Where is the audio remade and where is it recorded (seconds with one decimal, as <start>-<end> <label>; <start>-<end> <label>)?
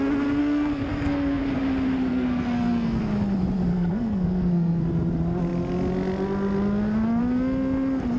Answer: 0.0-0.4 recorded; 0.4-1.4 remade; 1.4-2.1 recorded; 2.1-3.0 remade; 3.0-3.7 recorded; 3.7-4.8 remade; 4.8-8.2 recorded